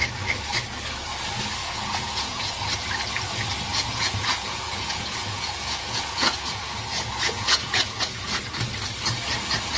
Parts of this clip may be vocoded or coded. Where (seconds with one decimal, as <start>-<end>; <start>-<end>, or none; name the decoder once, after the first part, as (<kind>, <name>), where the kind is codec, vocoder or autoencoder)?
1.6-2.5 (vocoder, Vocos); 3.7-8.4

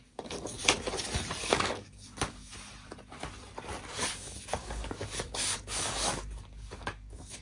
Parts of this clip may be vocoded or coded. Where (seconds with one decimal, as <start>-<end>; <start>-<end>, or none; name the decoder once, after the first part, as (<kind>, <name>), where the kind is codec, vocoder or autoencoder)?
0.0-0.6 (codec, DAC); 1.4-2.5; 3.9-7.4

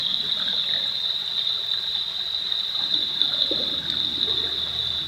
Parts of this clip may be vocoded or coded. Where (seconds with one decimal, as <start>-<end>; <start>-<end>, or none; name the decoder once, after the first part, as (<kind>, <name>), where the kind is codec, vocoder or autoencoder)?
none

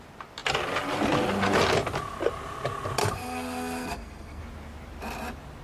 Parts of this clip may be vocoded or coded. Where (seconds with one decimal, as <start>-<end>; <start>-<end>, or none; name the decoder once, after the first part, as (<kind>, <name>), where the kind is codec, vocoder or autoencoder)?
3.0-4.4 (codec, SNAC)